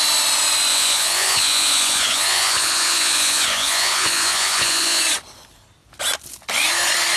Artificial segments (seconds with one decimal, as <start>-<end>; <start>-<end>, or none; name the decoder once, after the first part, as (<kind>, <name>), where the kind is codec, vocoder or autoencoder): 0.7-5.0 (vocoder, Vocos)